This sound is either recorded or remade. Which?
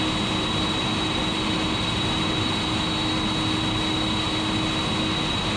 recorded